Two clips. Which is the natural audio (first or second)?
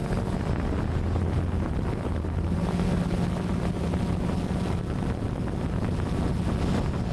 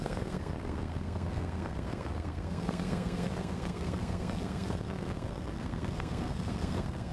first